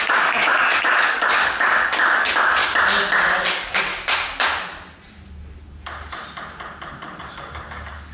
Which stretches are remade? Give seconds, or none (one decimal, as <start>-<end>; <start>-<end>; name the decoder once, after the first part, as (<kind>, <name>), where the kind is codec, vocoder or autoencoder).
0.0-2.6 (codec, DAC); 3.4-3.9; 7.2-8.1